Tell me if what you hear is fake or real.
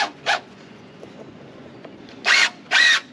fake